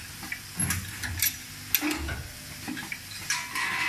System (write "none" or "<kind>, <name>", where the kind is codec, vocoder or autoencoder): none